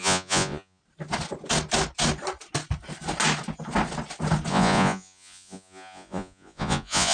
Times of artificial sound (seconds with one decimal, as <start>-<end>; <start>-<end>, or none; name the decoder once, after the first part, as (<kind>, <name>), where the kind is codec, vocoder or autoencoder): 0.0-0.8 (vocoder, Vocos); 4.5-7.1